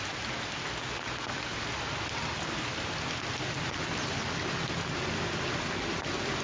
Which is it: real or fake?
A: real